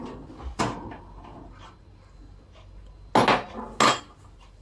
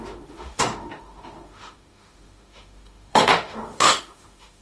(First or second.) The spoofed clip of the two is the second